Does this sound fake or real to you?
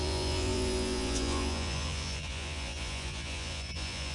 fake